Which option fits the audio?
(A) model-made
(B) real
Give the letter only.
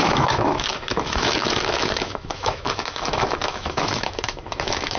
A